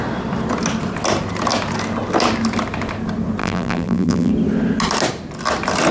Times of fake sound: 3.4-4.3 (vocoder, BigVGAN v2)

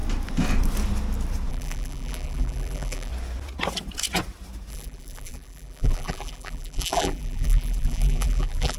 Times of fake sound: 1.5-3.1 (vocoder, BigVGAN v2); 4.7-8.8

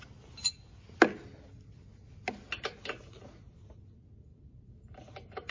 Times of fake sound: 4.3-5.5 (vocoder, BigVGAN v2)

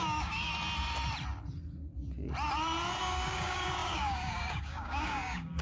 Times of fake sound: 0.0-0.5 (codec, DAC); 3.0-5.6

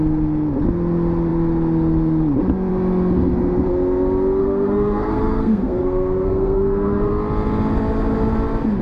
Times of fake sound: 4.4-7.1 (codec, SNAC)

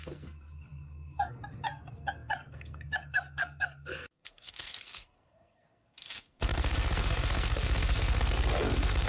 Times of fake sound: 0.0-9.1 (codec, SNAC)

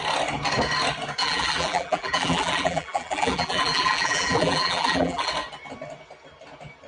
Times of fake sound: 1.2-5.3 (vocoder, BigVGAN v2)